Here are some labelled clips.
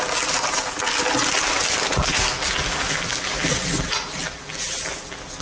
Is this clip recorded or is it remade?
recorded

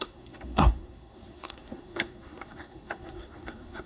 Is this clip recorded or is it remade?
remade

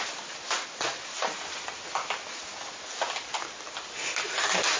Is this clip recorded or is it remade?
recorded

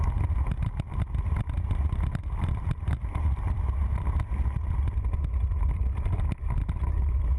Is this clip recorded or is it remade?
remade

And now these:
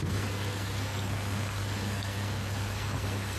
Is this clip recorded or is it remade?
remade